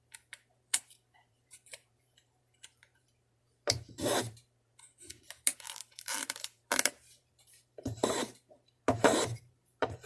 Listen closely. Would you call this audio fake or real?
fake